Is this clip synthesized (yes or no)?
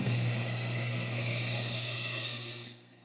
yes